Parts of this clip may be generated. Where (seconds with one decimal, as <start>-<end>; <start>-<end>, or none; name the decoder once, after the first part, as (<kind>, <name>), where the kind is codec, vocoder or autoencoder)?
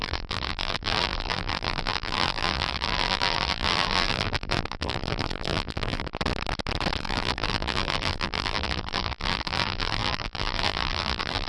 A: 0.0-6.1 (vocoder, BigVGAN v2); 7.0-11.5